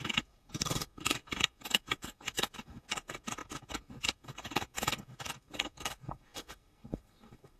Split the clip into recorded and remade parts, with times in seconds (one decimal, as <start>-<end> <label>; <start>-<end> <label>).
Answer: 0.0-7.6 remade